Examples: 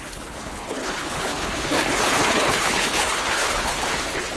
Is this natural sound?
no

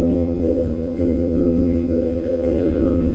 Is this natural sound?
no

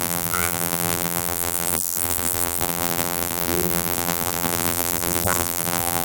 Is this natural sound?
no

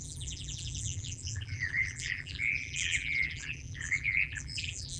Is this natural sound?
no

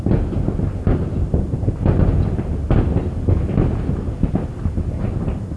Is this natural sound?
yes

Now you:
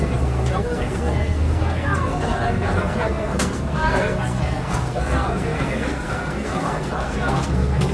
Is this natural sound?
no